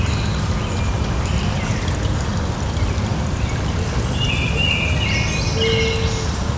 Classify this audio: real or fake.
real